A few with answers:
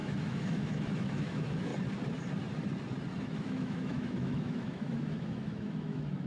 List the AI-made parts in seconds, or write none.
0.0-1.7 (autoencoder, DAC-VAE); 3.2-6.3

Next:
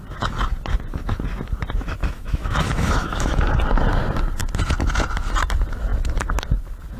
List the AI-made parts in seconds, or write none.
2.0-3.4 (autoencoder, DAC-VAE)

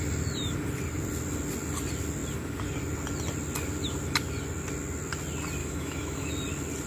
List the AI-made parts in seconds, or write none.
5.6-6.3 (autoencoder, DAC-VAE)

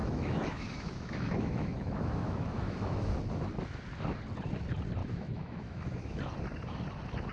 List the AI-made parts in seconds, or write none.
0.0-3.1 (autoencoder, DAC-VAE); 5.0-6.2

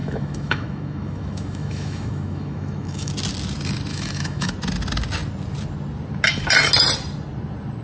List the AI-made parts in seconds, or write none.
0.0-3.1 (autoencoder, DAC-VAE); 3.9-4.5

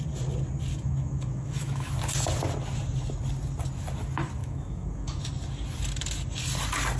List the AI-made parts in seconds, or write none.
0.7-1.9 (autoencoder, DAC-VAE); 4.4-5.2

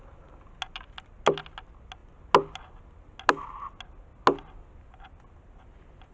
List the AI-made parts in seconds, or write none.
none

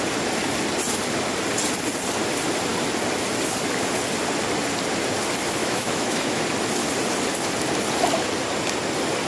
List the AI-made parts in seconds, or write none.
5.6-6.4 (autoencoder, DAC-VAE)